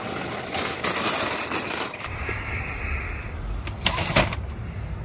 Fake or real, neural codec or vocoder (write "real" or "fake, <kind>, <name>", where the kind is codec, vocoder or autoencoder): real